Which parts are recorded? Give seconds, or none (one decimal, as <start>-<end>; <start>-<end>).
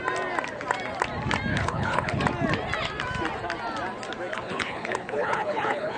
0.0-1.5; 2.2-4.3